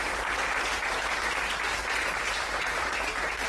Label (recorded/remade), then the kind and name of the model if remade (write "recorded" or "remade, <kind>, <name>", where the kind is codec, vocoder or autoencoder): remade, vocoder, BigVGAN v2